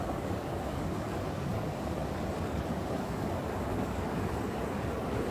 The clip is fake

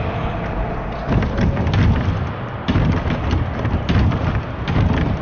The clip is real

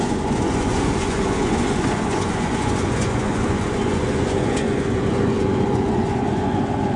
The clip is fake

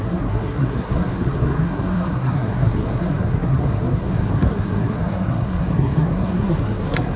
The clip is fake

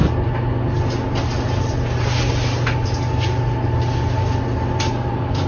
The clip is real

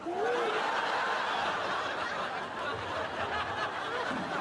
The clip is real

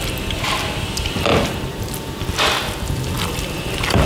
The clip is real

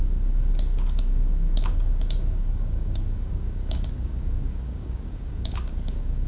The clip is fake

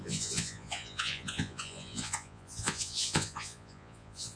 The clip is fake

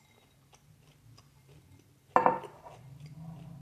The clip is real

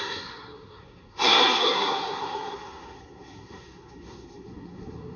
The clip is fake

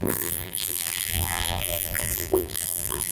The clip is fake